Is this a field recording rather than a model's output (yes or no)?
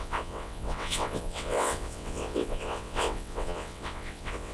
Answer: no